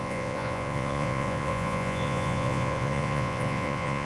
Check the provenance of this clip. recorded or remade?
remade